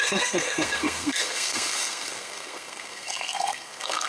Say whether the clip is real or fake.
fake